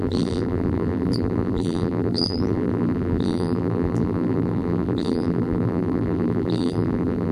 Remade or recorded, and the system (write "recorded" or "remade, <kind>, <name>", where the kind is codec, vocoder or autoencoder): remade, vocoder, BigVGAN v2